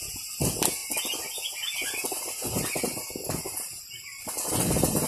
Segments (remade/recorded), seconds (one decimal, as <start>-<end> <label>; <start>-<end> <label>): 0.0-5.1 recorded